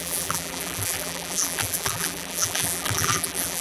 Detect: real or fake fake